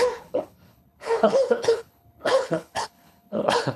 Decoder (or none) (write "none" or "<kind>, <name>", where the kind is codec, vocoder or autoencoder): codec, HILCodec